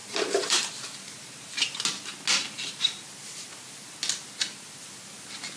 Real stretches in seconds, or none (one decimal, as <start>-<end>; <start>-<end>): 0.7-5.6